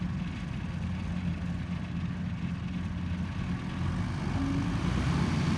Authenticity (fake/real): real